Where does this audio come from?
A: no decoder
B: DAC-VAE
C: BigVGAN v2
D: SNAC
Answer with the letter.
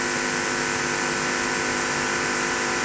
A